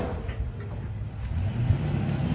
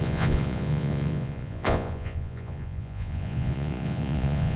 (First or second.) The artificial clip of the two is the second